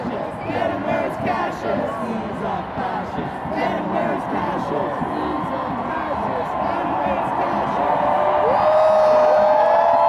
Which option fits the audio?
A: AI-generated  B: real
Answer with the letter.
B